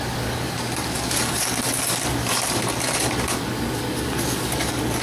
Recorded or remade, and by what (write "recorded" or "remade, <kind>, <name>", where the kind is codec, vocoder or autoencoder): remade, codec, DAC